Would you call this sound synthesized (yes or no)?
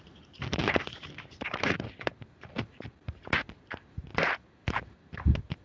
yes